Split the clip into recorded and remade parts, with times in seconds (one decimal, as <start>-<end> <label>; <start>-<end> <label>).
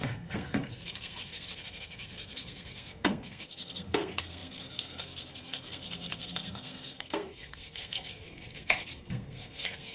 0.0-9.9 remade